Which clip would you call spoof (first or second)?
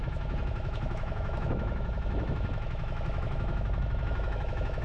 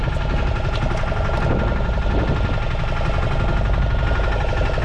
first